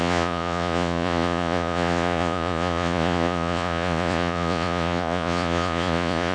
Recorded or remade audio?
remade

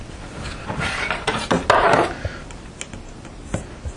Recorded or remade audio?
recorded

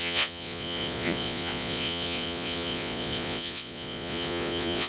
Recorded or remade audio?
remade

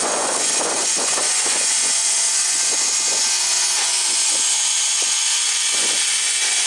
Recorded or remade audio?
remade